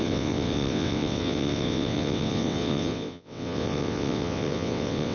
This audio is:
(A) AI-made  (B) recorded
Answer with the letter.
A